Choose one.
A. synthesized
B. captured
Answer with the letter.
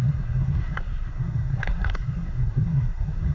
A